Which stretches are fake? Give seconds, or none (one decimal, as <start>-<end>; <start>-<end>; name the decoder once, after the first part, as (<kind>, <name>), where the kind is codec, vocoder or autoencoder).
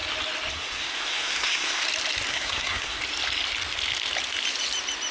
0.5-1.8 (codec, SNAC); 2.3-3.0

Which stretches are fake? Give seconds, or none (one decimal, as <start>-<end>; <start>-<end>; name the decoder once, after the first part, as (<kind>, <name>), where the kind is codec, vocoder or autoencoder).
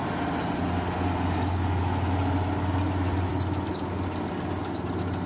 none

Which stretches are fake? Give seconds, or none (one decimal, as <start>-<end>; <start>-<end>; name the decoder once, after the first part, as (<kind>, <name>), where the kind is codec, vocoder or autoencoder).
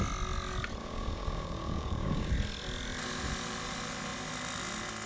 0.8-2.3 (codec, DAC)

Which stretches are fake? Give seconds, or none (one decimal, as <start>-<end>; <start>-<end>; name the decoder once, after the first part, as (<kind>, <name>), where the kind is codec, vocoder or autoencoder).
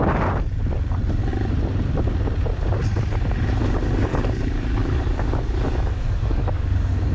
4.1-7.1 (codec, DAC)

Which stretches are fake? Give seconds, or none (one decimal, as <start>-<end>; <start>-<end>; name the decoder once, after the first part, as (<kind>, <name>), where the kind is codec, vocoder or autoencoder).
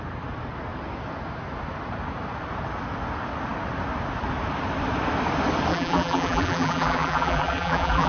5.7-8.1 (vocoder, BigVGAN v2)